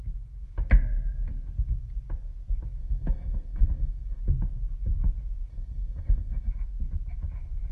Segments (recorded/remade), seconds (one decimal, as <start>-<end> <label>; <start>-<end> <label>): 0.0-2.8 recorded; 2.8-4.2 remade; 4.2-5.5 recorded; 5.5-6.5 remade; 6.5-7.7 recorded